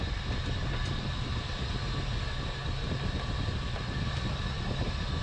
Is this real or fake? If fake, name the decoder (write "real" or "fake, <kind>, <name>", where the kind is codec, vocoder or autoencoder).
real